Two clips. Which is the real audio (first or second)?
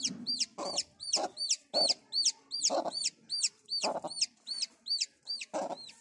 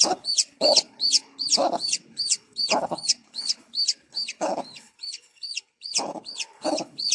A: first